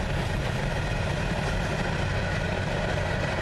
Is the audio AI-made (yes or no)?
no